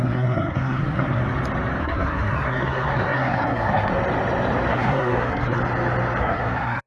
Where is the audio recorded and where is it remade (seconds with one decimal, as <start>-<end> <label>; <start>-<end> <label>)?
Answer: 0.0-1.2 remade; 1.2-1.8 recorded; 1.8-3.9 remade; 3.9-4.7 recorded; 4.7-5.6 remade; 5.6-6.2 recorded; 6.2-6.9 remade